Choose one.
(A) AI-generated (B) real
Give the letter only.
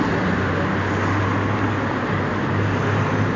B